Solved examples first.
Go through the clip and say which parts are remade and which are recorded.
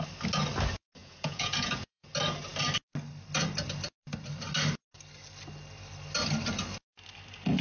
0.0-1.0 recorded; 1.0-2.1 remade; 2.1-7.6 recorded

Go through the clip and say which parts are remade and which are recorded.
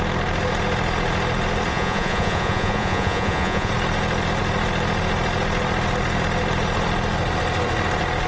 0.0-1.7 recorded; 1.7-3.7 remade; 3.7-8.3 recorded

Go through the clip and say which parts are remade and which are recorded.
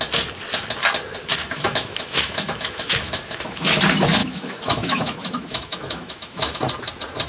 0.0-1.4 recorded; 1.4-3.8 remade; 3.8-4.2 recorded; 4.2-6.6 remade; 6.6-7.3 recorded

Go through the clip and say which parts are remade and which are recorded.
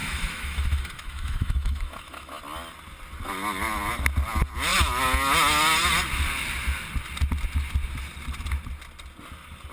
0.0-2.4 remade; 2.4-9.7 recorded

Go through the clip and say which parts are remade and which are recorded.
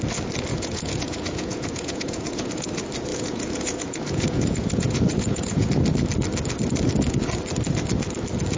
0.0-0.5 recorded; 0.5-2.7 remade; 2.7-3.1 recorded; 3.1-5.7 remade; 5.7-8.6 recorded